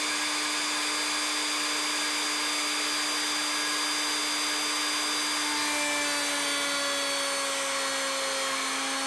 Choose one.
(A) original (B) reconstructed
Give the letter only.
A